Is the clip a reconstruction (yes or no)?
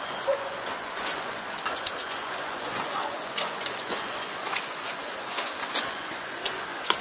yes